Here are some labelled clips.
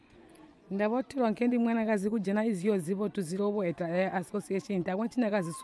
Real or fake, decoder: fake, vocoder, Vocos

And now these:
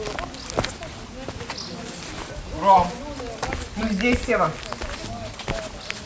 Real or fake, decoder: real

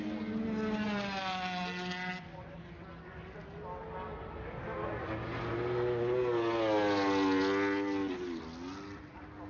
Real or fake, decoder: real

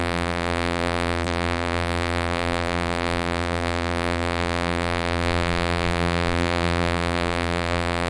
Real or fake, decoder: fake, vocoder, BigVGAN v2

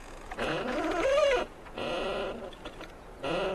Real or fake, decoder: fake, vocoder, Vocos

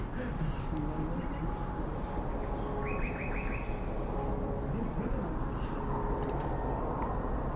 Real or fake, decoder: real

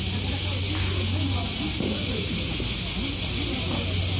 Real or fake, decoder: real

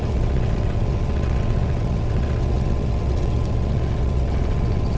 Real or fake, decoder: fake, vocoder, WaveNeXt